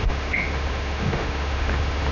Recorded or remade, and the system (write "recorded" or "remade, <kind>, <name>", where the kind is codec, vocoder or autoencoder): remade, autoencoder, DAC-VAE